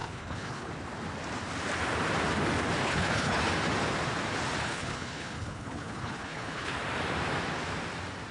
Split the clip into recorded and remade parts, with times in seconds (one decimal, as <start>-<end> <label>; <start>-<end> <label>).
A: 0.0-0.7 remade; 0.7-2.8 recorded; 2.8-3.5 remade; 3.5-4.6 recorded; 4.6-6.7 remade; 6.7-8.3 recorded